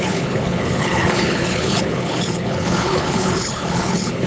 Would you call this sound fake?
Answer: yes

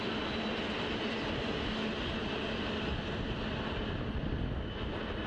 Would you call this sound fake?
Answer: no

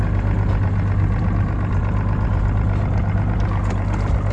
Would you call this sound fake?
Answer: no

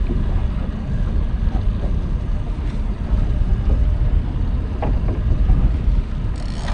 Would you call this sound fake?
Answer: no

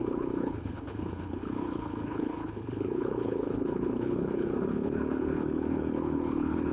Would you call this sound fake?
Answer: yes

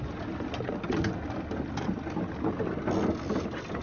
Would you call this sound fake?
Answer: no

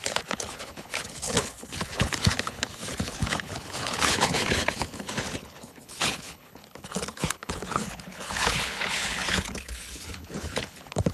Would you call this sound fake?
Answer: yes